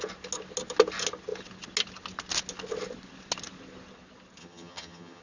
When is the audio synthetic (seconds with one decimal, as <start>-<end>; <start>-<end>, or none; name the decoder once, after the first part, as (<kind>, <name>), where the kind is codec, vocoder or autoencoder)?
4.4-5.2 (vocoder, HiFi-GAN)